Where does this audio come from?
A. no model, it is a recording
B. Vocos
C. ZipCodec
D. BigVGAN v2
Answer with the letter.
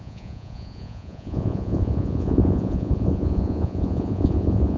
B